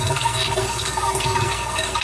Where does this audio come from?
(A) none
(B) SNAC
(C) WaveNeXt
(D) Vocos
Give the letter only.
B